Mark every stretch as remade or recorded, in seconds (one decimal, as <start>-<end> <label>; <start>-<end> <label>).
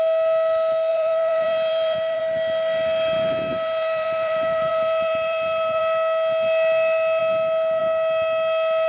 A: 0.0-0.9 recorded; 0.9-2.2 remade; 2.2-3.5 recorded; 3.5-5.8 remade; 5.8-8.9 recorded